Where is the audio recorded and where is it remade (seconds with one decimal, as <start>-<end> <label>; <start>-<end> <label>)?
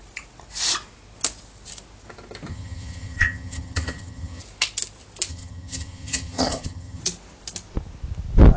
0.0-2.5 recorded; 2.5-4.4 remade; 4.4-5.3 recorded; 5.3-7.0 remade; 7.0-8.6 recorded